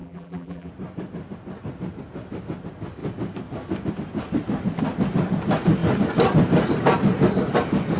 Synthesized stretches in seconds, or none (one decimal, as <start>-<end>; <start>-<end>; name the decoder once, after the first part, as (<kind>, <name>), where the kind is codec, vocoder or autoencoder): 0.0-0.7 (vocoder, BigVGAN v2)